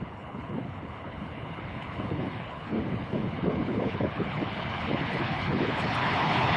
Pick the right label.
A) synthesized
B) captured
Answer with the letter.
A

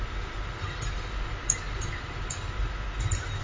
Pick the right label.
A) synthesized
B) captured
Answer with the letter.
B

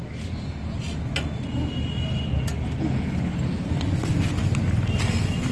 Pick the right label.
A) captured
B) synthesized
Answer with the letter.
A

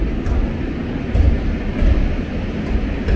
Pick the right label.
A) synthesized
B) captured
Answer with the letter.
B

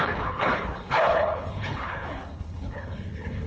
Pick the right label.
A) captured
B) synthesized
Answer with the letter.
B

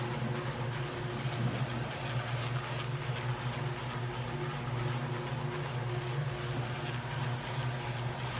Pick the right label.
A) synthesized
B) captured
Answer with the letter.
B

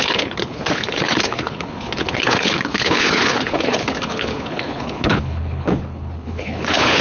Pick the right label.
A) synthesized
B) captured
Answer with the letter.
A